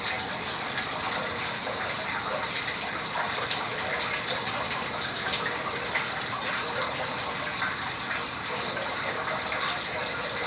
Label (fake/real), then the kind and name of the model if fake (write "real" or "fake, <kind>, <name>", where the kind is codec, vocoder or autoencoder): real